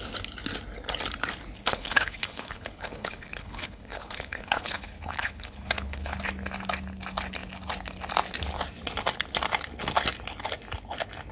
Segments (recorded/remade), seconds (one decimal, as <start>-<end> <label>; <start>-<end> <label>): 0.0-1.7 recorded; 1.7-6.2 remade; 6.2-11.3 recorded